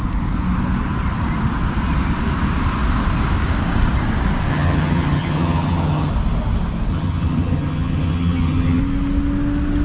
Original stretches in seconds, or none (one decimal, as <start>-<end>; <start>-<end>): 0.0-4.5; 6.1-6.9; 8.8-9.8